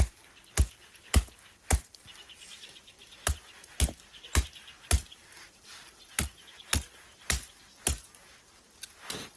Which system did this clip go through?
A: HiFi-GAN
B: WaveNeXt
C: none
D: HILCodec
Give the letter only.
C